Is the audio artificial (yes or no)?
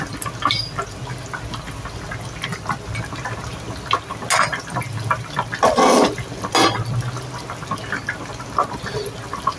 no